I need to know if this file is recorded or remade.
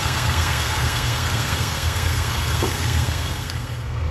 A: remade